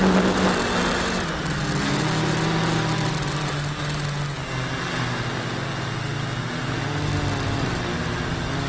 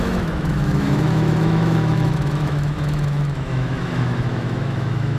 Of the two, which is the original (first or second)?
first